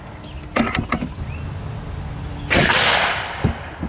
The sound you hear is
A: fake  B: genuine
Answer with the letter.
B